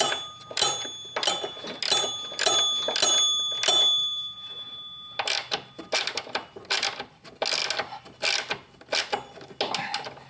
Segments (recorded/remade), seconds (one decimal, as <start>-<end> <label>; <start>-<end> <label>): 0.0-10.3 recorded